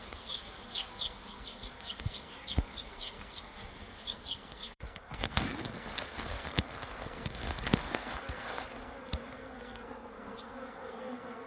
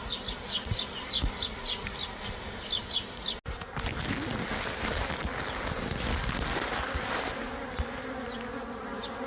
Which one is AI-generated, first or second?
first